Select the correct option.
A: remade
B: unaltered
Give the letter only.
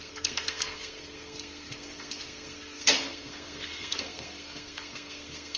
A